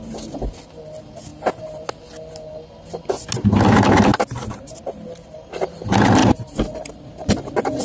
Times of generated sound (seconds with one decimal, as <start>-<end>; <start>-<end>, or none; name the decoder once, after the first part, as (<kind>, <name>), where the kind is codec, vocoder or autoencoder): 6.2-7.8 (vocoder, BigVGAN v2)